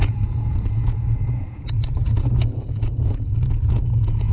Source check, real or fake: fake